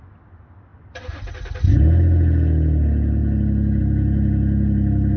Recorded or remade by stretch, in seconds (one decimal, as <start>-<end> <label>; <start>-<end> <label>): 0.0-5.2 recorded